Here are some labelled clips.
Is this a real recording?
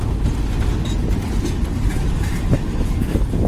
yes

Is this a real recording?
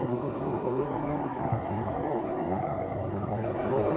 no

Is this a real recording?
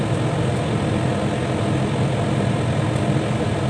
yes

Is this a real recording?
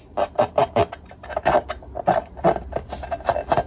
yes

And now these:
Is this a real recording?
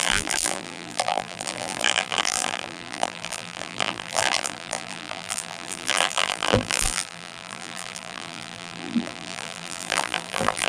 no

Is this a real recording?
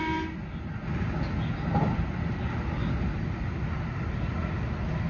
yes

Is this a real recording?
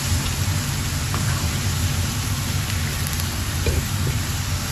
yes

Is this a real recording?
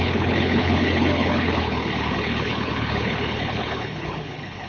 no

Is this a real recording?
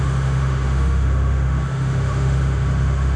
no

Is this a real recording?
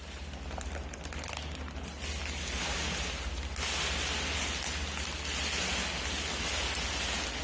yes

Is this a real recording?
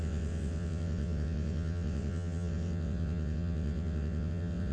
no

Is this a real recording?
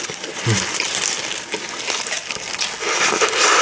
yes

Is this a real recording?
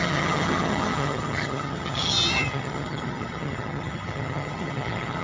no